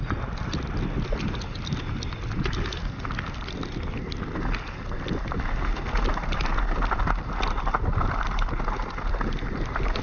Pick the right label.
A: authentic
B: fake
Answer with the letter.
A